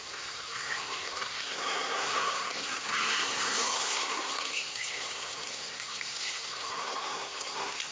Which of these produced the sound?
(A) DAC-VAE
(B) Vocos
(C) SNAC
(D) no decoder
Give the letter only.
C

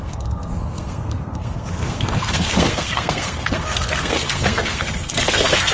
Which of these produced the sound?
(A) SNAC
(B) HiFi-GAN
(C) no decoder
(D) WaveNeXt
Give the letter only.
A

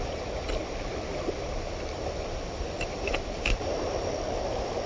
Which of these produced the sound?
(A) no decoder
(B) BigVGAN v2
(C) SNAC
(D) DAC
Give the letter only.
A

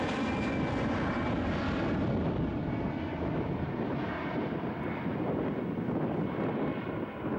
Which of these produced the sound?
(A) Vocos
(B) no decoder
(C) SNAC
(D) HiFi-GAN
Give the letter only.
B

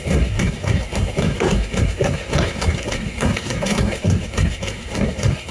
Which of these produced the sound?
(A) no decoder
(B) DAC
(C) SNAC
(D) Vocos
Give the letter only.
C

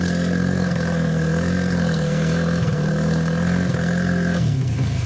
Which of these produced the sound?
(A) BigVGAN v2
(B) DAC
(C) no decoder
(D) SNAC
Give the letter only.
D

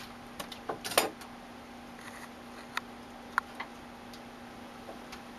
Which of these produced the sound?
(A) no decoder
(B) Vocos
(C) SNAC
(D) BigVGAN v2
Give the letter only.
A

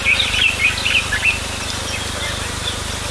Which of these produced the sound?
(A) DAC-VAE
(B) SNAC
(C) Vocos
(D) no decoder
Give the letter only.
D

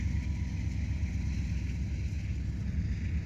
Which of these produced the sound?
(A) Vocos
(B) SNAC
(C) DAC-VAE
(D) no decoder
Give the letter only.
D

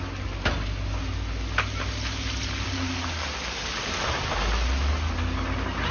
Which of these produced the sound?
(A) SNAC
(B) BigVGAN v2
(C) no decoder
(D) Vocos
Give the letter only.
C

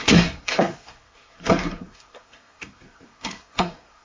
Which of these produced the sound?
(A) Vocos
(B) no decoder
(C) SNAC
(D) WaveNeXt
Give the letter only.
C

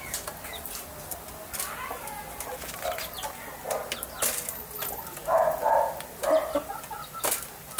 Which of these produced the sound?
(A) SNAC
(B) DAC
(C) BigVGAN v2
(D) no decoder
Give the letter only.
D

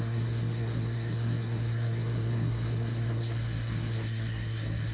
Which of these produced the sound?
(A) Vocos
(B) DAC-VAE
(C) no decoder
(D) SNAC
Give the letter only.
D